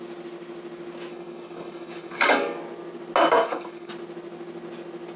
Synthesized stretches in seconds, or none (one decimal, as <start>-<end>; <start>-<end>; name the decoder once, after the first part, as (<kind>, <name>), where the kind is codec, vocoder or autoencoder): 1.1-2.6 (codec, DAC); 3.4-3.9